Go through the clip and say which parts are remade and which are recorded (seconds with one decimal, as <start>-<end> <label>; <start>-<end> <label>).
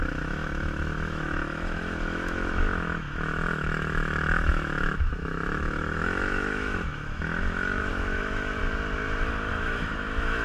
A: 0.0-8.6 remade; 8.6-9.5 recorded; 9.5-10.4 remade